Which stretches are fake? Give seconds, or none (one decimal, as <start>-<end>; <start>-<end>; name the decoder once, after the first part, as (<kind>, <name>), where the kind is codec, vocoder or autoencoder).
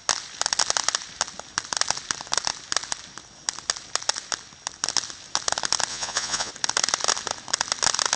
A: 5.9-6.5 (vocoder, Vocos)